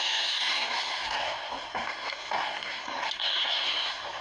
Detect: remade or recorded remade